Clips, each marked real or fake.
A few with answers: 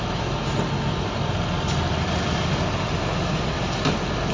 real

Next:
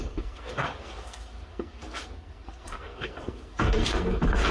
fake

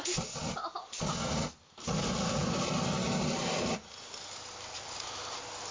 real